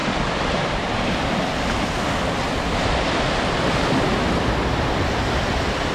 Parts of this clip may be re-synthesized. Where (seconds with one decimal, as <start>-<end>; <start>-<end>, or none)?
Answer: none